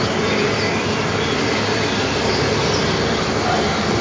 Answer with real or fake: real